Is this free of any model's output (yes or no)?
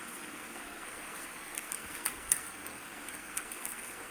no